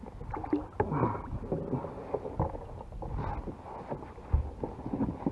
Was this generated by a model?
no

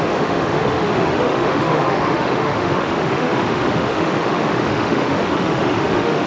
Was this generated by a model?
yes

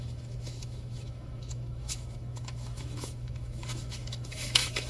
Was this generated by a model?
yes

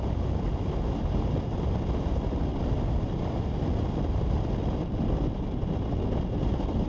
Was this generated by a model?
no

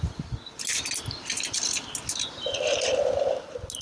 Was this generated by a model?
no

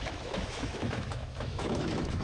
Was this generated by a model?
yes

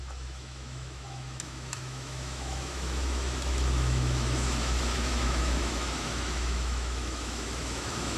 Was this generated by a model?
yes